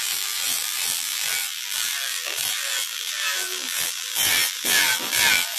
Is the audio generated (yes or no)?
yes